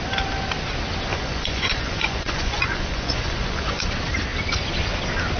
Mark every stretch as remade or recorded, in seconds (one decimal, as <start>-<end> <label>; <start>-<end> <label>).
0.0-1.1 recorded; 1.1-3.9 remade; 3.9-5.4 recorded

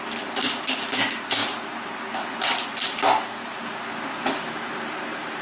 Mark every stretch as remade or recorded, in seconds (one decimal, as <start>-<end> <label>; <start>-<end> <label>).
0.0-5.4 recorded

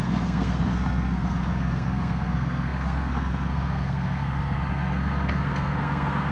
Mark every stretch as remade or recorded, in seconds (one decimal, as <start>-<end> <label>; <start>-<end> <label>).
0.0-6.3 remade

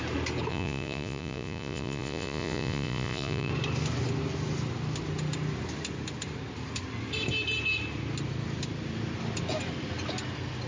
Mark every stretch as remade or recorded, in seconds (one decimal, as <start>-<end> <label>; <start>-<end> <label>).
0.0-0.5 recorded; 0.5-3.5 remade; 3.5-10.7 recorded

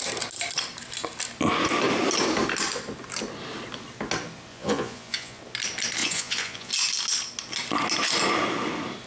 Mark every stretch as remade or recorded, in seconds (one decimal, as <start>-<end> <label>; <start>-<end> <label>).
0.0-4.5 recorded; 4.5-5.4 remade; 5.4-6.0 recorded; 6.0-6.7 remade; 6.7-9.1 recorded

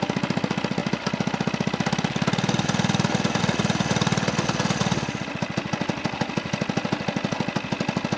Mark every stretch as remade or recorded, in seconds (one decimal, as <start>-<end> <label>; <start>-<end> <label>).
0.0-8.2 recorded

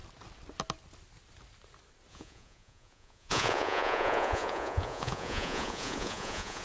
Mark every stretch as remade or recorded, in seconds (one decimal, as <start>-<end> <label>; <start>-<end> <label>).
0.0-2.1 recorded; 2.1-6.6 remade